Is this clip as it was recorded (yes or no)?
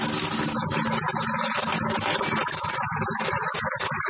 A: yes